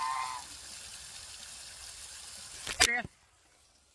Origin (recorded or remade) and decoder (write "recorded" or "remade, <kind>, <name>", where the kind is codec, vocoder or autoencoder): recorded